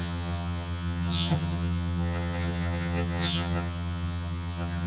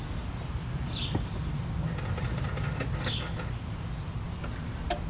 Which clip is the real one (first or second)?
second